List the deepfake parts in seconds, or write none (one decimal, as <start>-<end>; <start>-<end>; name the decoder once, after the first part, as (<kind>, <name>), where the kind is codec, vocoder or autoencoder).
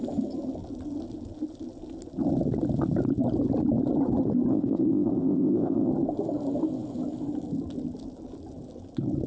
4.5-5.9 (codec, ZipCodec)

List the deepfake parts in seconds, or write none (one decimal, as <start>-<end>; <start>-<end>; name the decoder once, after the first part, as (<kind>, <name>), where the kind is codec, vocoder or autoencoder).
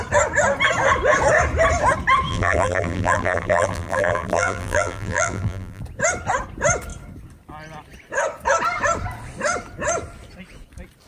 2.3-5.8 (vocoder, BigVGAN v2)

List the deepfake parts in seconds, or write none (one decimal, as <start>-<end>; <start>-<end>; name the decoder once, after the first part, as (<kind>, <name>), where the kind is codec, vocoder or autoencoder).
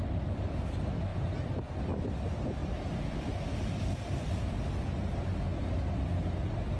1.1-2.1 (vocoder, BigVGAN v2)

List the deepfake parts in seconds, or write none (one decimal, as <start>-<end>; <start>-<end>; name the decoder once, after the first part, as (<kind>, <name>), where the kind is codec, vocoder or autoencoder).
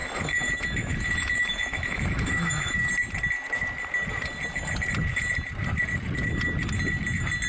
0.0-2.9 (autoencoder, DAC-VAE)